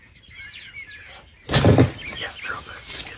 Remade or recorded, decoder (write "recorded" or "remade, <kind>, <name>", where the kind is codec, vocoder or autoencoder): recorded